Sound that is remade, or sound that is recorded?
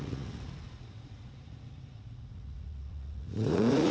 remade